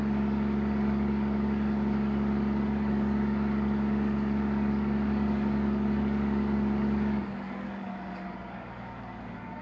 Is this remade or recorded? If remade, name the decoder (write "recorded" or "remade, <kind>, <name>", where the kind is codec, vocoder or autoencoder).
remade, codec, DAC